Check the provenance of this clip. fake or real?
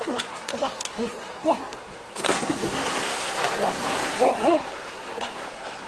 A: fake